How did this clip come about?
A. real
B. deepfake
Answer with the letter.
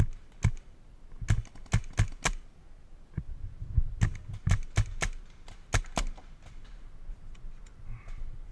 A